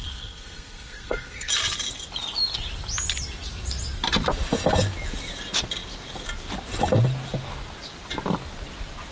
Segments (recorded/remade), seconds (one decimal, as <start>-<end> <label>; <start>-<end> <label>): 0.0-1.5 remade; 1.5-9.1 recorded